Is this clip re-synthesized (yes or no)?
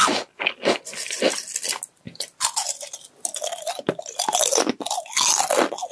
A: no